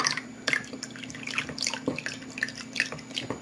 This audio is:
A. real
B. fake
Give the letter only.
A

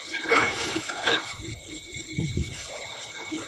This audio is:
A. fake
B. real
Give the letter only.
A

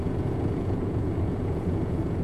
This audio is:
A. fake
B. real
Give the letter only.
A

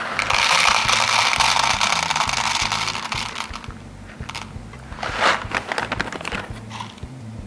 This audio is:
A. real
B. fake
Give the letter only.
A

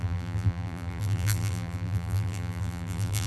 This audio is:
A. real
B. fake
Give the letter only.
B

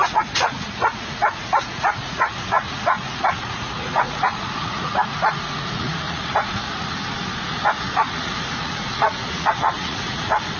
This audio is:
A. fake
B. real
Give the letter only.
A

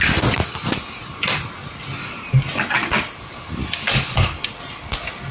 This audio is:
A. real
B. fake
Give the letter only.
A